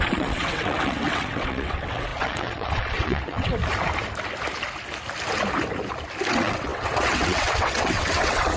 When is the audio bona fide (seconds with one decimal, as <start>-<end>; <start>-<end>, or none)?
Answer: 3.5-6.3